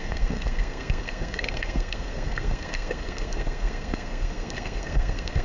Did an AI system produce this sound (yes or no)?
yes